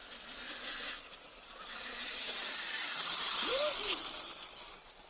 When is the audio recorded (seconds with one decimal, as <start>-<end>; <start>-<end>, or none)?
0.0-2.4; 3.7-5.1